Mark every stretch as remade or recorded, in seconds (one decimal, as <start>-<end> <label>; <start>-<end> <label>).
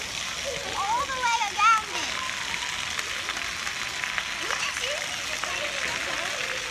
0.0-6.7 recorded